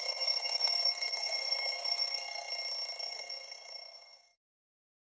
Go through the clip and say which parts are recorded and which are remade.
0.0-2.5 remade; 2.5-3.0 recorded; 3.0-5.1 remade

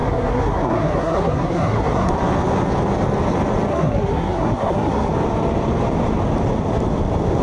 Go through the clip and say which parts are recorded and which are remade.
0.0-2.1 remade; 2.1-3.7 recorded; 3.7-5.1 remade; 5.1-7.4 recorded

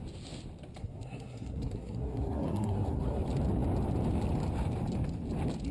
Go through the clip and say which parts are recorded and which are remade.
0.0-0.8 recorded; 0.8-3.2 remade; 3.2-5.7 recorded

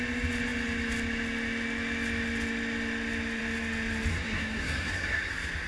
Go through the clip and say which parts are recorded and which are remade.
0.0-4.1 recorded; 4.1-5.3 remade; 5.3-5.7 recorded